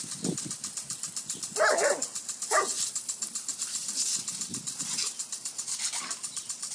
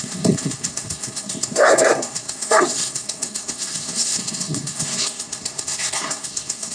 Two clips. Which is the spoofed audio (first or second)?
second